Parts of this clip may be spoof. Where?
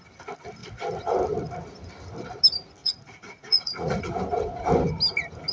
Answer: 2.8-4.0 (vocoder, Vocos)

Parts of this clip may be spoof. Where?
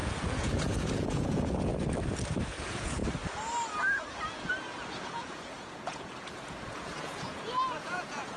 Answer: 0.0-1.7 (vocoder, Vocos); 2.6-3.0; 4.9-8.4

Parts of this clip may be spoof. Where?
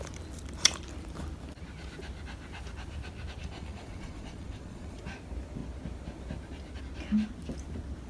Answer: 3.4-5.0 (vocoder, Vocos)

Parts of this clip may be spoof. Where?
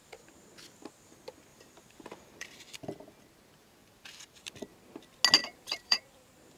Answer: 1.5-2.8 (vocoder, BigVGAN v2); 3.8-4.5; 5.4-6.0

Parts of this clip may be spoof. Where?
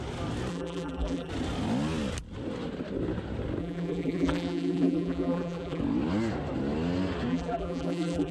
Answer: 0.5-1.3 (vocoder, BigVGAN v2); 3.6-5.8; 7.3-8.3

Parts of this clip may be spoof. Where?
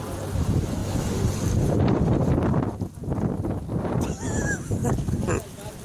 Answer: none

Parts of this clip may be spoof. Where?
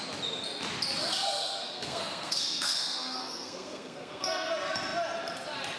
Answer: 1.0-4.5 (codec, SNAC)